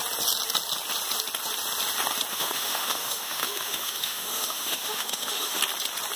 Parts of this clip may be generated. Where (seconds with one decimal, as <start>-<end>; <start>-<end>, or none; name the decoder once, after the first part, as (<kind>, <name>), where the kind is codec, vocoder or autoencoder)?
2.3-5.6 (autoencoder, DAC-VAE)